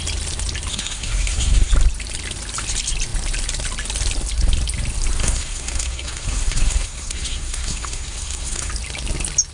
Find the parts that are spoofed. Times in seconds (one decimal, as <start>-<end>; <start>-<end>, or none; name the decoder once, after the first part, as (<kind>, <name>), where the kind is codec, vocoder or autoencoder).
0.7-1.7 (codec, SNAC); 5.2-8.7